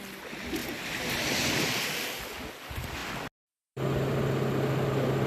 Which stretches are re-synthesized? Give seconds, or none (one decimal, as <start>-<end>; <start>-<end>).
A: none